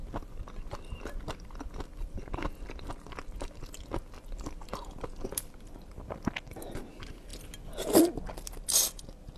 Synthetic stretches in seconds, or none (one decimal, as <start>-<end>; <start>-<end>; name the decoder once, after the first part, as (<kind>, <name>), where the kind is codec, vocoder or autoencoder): none